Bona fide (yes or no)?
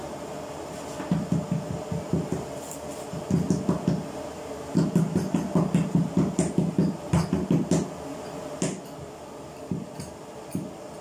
yes